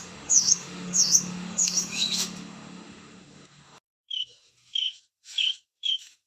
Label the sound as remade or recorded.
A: remade